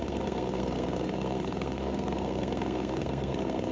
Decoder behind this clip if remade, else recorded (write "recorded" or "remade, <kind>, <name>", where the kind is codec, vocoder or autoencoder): remade, codec, SNAC